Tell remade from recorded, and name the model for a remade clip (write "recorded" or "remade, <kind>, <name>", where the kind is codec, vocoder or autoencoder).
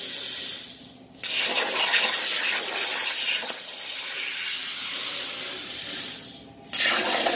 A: recorded